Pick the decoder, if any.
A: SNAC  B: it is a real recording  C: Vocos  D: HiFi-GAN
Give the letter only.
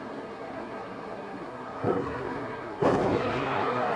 A